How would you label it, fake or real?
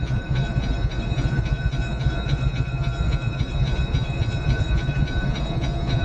fake